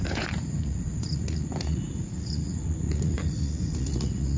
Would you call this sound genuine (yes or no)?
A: no